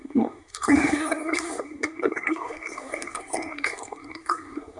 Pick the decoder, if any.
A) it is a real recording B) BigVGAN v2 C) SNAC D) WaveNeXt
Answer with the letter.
C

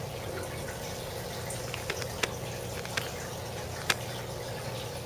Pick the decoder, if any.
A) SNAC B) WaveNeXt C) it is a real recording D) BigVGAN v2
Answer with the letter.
C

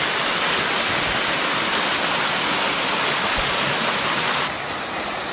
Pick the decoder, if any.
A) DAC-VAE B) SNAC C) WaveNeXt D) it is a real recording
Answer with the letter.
D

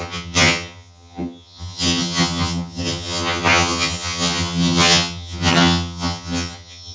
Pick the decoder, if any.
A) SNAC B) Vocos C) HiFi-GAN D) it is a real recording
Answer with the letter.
C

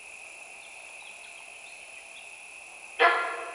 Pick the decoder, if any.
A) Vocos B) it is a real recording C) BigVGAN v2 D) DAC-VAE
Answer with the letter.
B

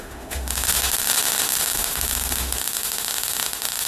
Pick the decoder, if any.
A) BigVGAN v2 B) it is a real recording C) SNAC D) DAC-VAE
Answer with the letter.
D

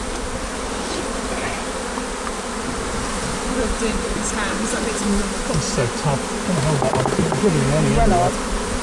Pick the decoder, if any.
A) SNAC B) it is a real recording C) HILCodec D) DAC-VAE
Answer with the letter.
B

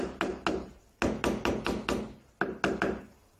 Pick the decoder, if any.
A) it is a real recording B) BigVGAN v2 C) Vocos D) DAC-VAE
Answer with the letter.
A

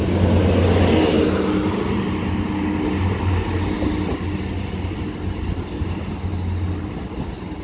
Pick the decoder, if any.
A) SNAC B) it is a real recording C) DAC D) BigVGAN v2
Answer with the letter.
B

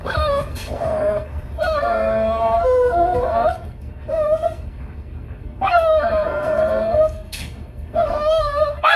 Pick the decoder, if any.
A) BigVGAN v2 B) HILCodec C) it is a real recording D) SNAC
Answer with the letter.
D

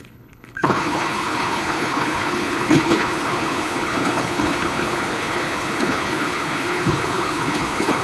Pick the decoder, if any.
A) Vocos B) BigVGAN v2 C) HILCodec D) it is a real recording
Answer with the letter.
C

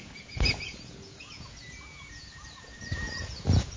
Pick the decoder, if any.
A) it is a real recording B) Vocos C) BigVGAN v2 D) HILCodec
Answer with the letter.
B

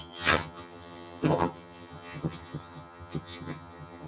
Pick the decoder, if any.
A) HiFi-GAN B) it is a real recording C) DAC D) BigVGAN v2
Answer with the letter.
A